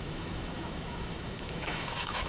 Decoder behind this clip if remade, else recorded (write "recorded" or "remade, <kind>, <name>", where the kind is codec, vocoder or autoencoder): remade, autoencoder, DAC-VAE